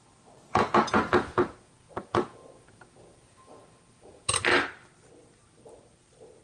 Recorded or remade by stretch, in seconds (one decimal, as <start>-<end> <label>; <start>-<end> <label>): 0.0-0.5 recorded; 0.5-4.3 remade; 4.3-6.4 recorded